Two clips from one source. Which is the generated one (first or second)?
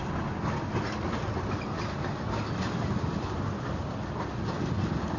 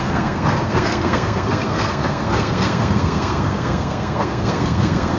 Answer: second